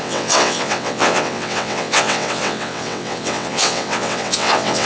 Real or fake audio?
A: fake